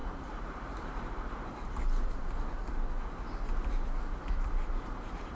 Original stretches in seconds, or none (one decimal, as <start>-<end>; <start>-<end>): 2.6-4.7